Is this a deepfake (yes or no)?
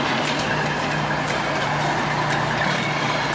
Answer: yes